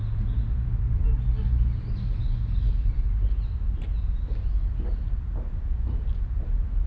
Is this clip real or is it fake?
real